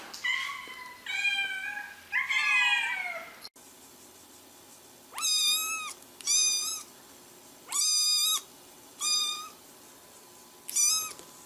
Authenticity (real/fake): real